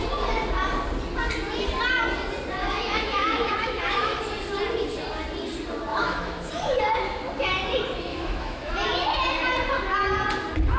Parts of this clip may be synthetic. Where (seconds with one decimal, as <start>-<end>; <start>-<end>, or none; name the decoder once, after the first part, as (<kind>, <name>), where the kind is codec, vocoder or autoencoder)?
2.6-4.2 (autoencoder, DAC-VAE); 5.9-6.8; 8.1-8.7